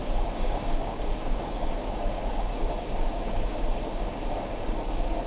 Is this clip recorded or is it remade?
remade